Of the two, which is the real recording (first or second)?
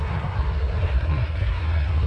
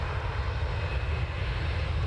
second